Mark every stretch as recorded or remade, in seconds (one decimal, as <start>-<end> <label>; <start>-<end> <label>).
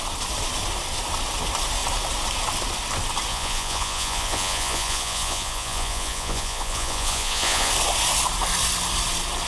0.0-3.3 recorded; 3.3-7.7 remade; 7.7-9.5 recorded